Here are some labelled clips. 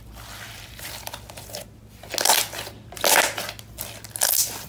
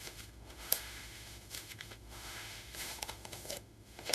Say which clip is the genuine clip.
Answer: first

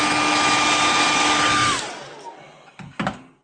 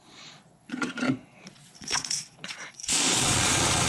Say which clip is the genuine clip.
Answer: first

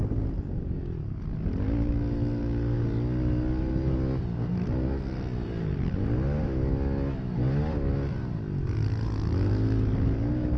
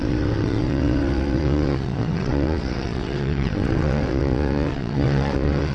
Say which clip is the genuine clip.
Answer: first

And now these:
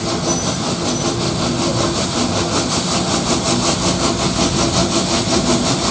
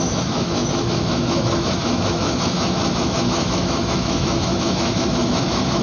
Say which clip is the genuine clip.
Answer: first